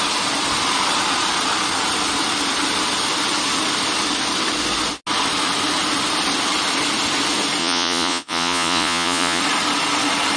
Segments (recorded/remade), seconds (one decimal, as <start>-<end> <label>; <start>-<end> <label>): 0.0-7.6 recorded; 7.6-9.4 remade; 9.4-10.4 recorded